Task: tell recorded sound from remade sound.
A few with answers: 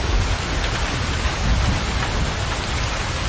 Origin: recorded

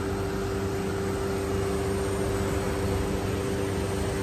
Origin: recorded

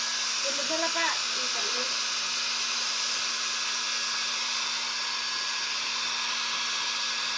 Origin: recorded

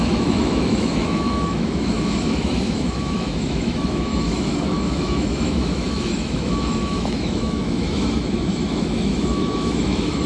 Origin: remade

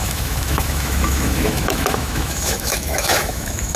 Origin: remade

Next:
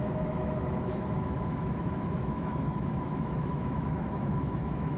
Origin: remade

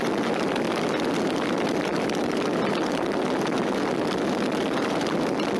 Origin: recorded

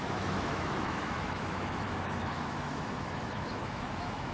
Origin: remade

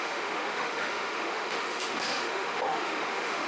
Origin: remade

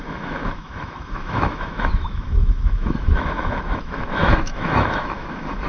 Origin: remade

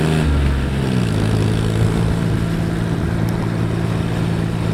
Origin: recorded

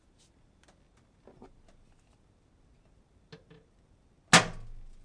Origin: recorded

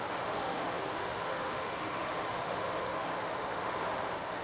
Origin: remade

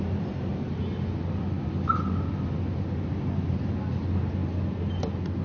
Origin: recorded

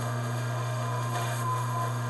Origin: remade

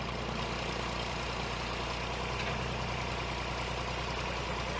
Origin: recorded